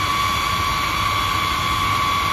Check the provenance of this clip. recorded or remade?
recorded